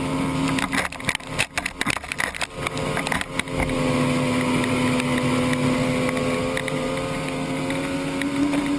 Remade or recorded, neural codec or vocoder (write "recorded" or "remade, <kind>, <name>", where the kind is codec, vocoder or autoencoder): recorded